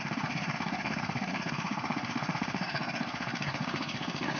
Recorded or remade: remade